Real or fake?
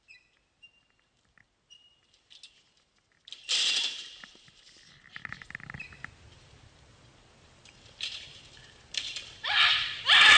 real